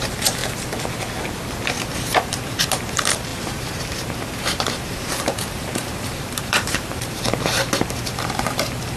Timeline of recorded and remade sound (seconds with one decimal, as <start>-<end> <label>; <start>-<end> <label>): 0.0-0.4 remade; 0.4-1.9 recorded; 1.9-9.0 remade